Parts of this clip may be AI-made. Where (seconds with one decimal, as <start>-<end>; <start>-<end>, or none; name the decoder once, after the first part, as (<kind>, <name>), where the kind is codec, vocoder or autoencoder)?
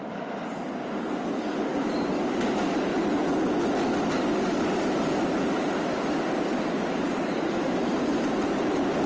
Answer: none